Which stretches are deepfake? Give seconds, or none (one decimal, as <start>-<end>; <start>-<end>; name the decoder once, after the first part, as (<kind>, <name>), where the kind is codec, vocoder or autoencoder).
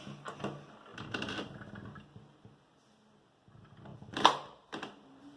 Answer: 0.9-1.4 (vocoder, BigVGAN v2); 3.9-4.7